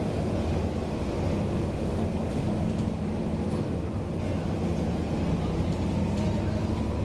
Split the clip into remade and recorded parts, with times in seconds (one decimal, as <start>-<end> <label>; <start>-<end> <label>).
0.0-7.0 recorded